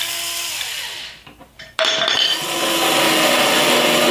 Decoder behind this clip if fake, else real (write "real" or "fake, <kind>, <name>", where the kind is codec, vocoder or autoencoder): real